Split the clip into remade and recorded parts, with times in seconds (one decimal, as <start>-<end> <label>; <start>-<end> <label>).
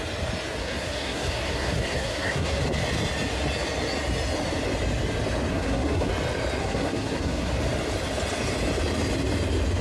0.0-0.6 recorded; 0.6-2.6 remade; 2.6-5.5 recorded; 5.5-6.1 remade; 6.1-6.6 recorded; 6.6-7.5 remade; 7.5-9.8 recorded